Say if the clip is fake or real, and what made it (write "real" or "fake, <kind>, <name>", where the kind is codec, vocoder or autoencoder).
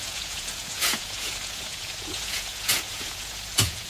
fake, vocoder, Vocos